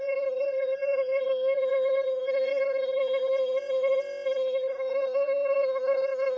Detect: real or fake fake